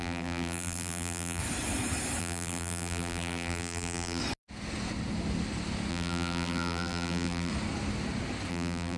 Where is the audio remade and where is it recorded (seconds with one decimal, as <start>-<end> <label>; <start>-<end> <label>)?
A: 0.0-1.4 remade; 1.4-2.2 recorded; 2.2-4.2 remade; 4.2-5.9 recorded; 5.9-7.5 remade; 7.5-8.5 recorded; 8.5-9.0 remade